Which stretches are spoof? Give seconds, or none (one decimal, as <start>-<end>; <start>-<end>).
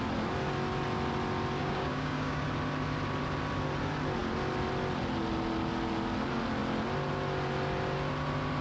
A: 1.6-2.4